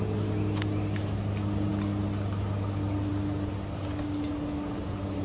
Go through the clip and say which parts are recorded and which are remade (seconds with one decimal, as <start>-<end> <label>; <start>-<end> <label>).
0.0-5.2 recorded